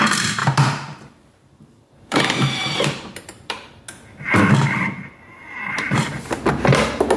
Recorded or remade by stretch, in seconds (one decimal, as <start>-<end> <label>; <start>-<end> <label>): 0.0-0.4 recorded; 0.4-3.8 remade; 3.8-5.4 recorded; 5.4-6.0 remade; 6.0-7.2 recorded